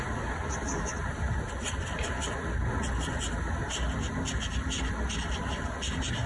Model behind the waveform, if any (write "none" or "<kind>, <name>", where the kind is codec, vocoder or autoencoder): none